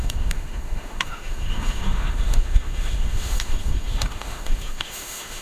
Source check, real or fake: fake